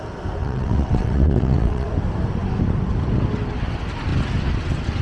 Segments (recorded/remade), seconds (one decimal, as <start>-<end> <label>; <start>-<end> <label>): 0.0-0.4 recorded; 0.4-1.9 remade; 1.9-5.0 recorded